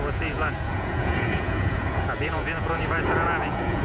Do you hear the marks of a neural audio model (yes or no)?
yes